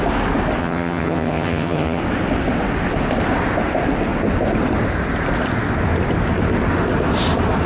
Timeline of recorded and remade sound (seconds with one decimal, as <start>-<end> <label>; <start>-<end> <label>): 0.0-0.6 recorded; 0.6-2.0 remade; 2.0-7.7 recorded